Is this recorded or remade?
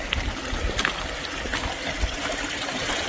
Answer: recorded